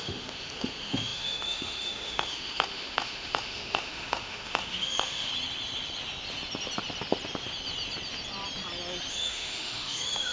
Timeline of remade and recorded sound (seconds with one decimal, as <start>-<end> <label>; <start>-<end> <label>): 0.0-5.3 remade; 5.3-9.1 recorded; 9.1-10.3 remade